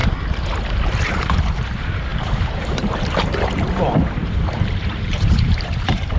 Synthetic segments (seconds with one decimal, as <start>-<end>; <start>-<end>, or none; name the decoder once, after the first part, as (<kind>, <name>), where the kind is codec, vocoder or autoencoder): 1.2-6.2 (vocoder, BigVGAN v2)